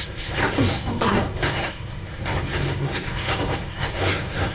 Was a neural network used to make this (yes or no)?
yes